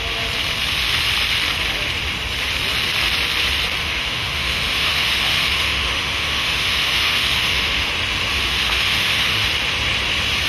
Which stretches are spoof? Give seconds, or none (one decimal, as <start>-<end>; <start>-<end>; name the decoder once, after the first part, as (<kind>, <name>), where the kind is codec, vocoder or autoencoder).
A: 3.8-7.9 (autoencoder, DAC-VAE); 8.3-9.5